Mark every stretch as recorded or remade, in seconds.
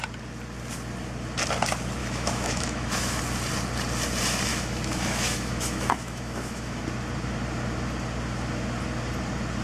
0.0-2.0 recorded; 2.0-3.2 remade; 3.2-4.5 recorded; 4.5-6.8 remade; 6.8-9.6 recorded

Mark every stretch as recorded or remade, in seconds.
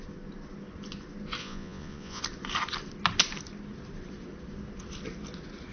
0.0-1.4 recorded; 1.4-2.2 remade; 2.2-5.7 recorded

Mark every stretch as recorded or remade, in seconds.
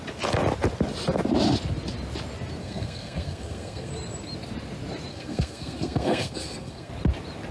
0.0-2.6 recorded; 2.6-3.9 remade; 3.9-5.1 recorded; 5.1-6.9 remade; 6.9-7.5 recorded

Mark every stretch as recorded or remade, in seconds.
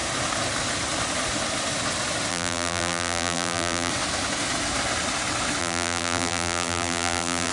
0.0-2.3 recorded; 2.3-3.9 remade; 3.9-5.6 recorded; 5.6-7.5 remade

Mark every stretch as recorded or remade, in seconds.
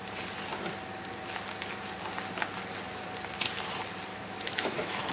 0.0-4.1 recorded; 4.1-5.1 remade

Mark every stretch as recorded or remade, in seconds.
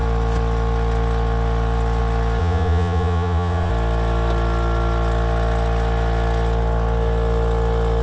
0.0-2.4 recorded; 2.4-3.7 remade; 3.7-8.0 recorded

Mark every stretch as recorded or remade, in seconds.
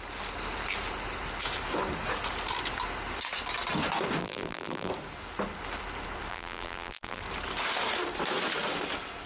0.0-4.2 recorded; 4.2-4.9 remade; 4.9-6.3 recorded; 6.3-7.2 remade; 7.2-9.3 recorded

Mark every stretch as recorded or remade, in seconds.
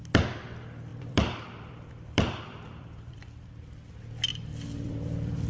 0.0-0.9 recorded; 0.9-3.2 remade; 3.2-4.3 recorded; 4.3-5.5 remade